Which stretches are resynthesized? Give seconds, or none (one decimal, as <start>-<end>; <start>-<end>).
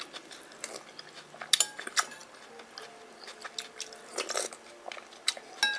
none